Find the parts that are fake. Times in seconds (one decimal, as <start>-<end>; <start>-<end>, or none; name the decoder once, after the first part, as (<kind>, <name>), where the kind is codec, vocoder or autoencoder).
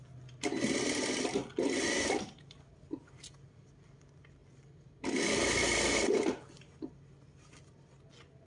none